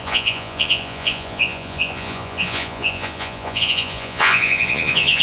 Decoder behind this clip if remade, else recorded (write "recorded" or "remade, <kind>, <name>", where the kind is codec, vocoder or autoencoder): remade, vocoder, Vocos